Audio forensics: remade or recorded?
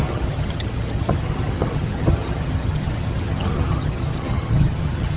remade